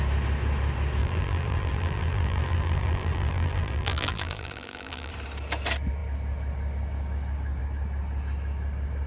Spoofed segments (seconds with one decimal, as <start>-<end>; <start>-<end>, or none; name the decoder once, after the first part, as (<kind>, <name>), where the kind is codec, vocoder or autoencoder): 1.0-5.1 (vocoder, BigVGAN v2)